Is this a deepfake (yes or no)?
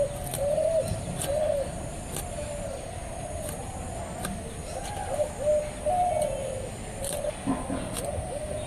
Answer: no